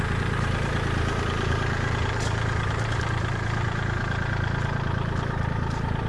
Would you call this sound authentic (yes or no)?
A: no